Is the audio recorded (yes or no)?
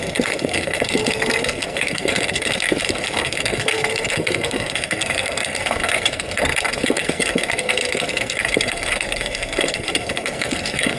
no